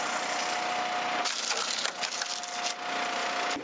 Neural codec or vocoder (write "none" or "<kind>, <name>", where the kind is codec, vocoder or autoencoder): none